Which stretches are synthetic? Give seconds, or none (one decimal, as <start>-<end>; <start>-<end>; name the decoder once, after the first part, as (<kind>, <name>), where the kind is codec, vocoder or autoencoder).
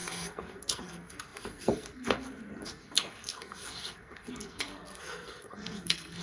0.0-6.2 (codec, SNAC)